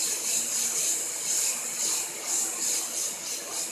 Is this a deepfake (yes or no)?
no